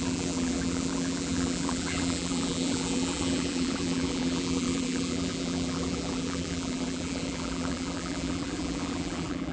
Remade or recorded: remade